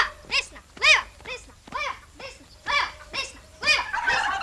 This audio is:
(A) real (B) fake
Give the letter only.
A